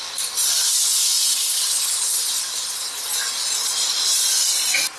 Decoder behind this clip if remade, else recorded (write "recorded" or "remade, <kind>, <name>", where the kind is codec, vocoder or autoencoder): recorded